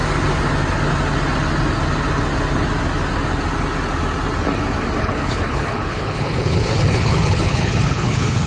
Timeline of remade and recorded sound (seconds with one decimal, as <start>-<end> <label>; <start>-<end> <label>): 0.0-5.0 recorded; 5.0-8.5 remade